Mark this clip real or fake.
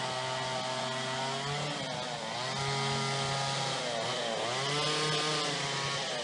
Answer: real